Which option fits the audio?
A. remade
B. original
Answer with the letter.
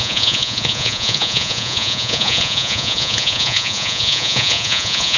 A